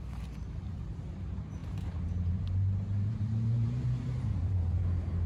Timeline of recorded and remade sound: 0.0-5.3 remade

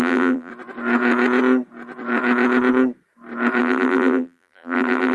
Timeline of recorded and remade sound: 0.0-0.5 remade; 0.5-3.6 recorded; 3.6-5.1 remade

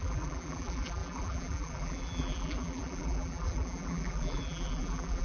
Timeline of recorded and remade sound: 0.0-5.2 remade

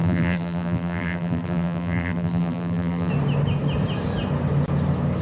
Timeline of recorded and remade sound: 0.0-3.1 remade; 3.1-5.2 recorded

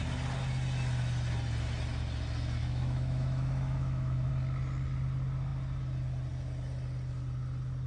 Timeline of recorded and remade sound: 0.0-2.6 recorded; 2.6-4.3 remade; 4.3-7.9 recorded

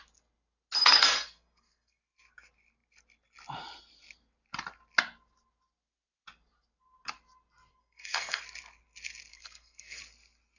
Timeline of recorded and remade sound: 0.0-0.8 recorded; 0.8-2.0 remade; 2.0-7.7 recorded; 7.7-8.4 remade; 8.4-9.3 recorded; 9.3-10.0 remade; 10.0-10.6 recorded